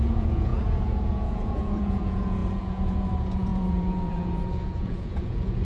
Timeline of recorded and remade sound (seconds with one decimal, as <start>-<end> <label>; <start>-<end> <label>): 0.0-5.6 remade